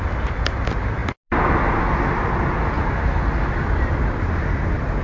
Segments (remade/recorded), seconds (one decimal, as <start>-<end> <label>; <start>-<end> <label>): 0.0-5.0 recorded